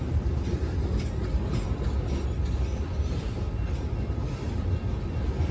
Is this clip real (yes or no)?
yes